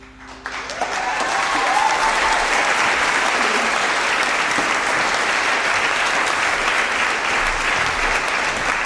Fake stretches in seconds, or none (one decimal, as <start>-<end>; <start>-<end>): 1.1-1.8